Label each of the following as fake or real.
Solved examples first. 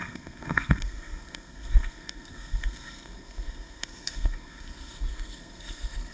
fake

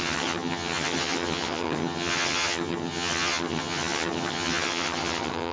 fake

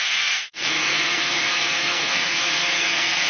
fake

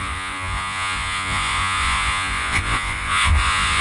fake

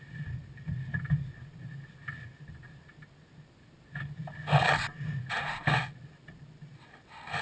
real